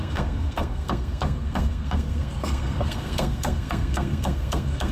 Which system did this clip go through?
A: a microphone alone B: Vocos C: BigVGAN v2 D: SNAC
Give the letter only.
D